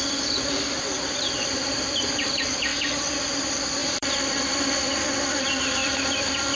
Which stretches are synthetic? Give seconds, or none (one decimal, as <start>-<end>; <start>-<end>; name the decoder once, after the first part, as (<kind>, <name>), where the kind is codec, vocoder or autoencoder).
0.0-2.7 (vocoder, BigVGAN v2); 3.2-6.6